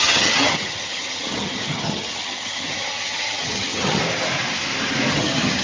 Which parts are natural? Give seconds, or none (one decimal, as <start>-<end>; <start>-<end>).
4.0-5.1